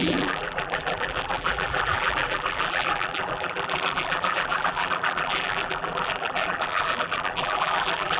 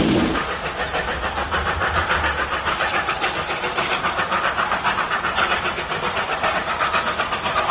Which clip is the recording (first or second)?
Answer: second